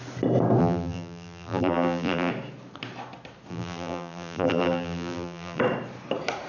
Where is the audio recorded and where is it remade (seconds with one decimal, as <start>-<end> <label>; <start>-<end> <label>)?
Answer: 0.0-0.6 recorded; 0.6-2.3 remade; 2.3-3.5 recorded; 3.5-5.6 remade; 5.6-6.5 recorded